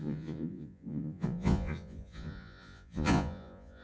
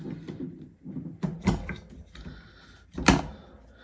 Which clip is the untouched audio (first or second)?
second